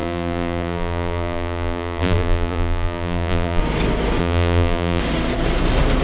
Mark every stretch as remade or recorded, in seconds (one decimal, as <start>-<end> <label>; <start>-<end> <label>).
0.0-3.6 remade; 3.6-4.2 recorded; 4.2-5.0 remade; 5.0-6.0 recorded